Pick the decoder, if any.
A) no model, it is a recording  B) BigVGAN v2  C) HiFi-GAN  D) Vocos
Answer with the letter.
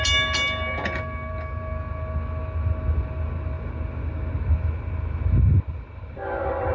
A